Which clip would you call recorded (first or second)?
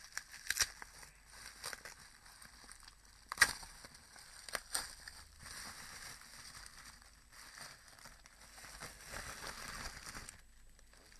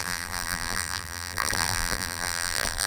first